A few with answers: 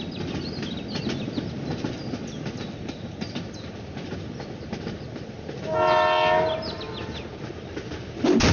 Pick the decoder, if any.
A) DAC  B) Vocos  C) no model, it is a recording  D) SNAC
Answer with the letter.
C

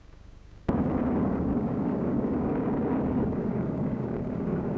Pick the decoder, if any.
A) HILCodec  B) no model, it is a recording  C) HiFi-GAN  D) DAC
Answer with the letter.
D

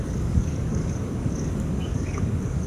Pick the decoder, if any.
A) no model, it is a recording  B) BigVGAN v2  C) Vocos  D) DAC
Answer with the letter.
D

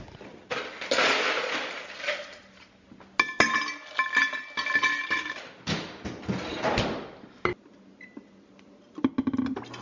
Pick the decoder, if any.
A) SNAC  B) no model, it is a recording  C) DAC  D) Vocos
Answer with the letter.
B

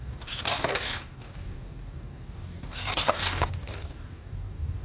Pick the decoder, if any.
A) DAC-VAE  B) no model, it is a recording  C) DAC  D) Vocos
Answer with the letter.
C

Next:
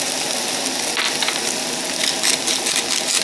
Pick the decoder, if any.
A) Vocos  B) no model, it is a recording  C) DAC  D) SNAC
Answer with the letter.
B